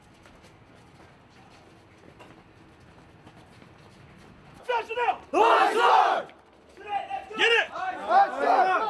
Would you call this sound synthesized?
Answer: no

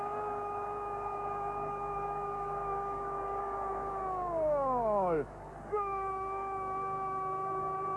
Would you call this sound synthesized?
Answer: yes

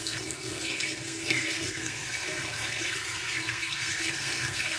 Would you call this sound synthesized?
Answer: yes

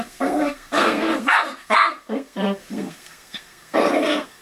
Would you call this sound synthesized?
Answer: yes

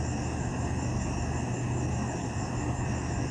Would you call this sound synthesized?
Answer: no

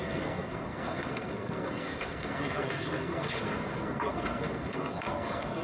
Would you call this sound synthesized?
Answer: yes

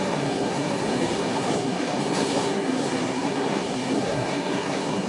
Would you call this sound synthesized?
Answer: yes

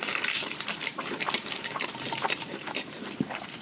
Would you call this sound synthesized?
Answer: yes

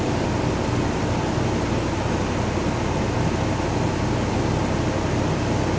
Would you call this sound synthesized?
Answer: yes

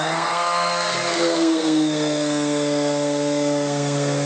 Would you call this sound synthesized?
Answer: yes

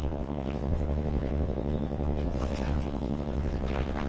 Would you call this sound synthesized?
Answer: yes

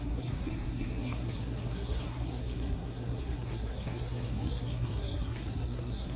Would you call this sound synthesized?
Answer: yes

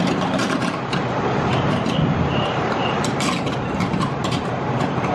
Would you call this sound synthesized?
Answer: yes